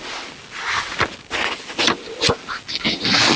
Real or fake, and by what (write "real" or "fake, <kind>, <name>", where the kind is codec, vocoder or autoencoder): real